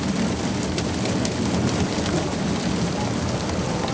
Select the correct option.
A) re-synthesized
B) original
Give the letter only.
B